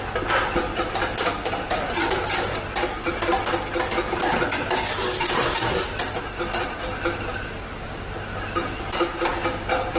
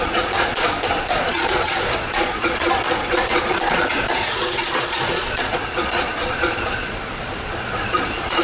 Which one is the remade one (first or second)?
second